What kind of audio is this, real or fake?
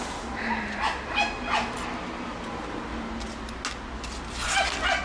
real